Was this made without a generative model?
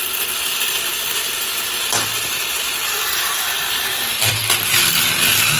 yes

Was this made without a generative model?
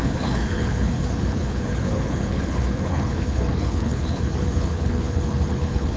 no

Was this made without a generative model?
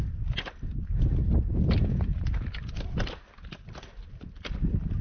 yes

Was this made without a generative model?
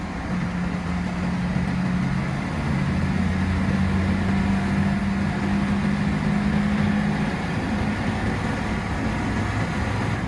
yes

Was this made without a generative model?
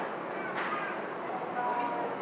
no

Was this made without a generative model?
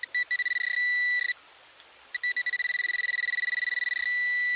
yes